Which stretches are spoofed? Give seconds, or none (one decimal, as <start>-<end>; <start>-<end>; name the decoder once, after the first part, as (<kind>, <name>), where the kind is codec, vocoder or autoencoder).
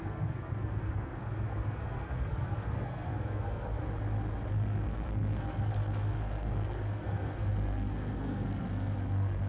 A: 0.0-3.8 (codec, SNAC); 4.5-9.5